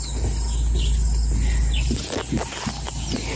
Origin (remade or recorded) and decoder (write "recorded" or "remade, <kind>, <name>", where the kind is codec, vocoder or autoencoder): recorded